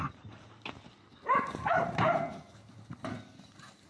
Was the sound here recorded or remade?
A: recorded